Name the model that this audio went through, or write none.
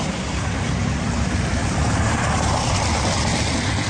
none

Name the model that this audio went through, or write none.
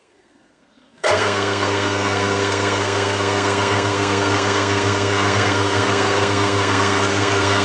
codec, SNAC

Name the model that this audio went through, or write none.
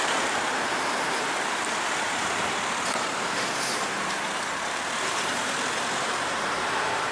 vocoder, BigVGAN v2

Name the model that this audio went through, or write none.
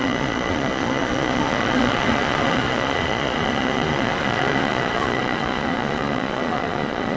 vocoder, Vocos